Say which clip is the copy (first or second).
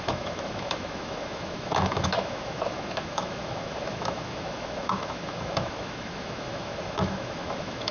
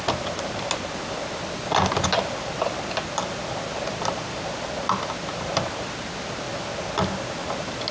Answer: first